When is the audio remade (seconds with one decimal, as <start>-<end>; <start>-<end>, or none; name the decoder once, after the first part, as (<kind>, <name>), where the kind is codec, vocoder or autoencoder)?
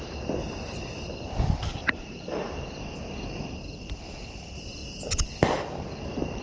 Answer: 1.8-2.9 (vocoder, BigVGAN v2)